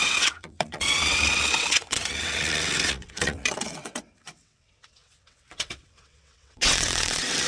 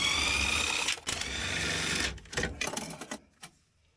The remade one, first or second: first